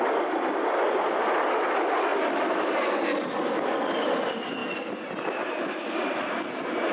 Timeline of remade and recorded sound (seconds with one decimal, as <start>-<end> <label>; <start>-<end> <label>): 0.0-6.9 recorded